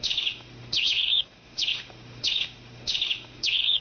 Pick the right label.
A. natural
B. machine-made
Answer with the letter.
B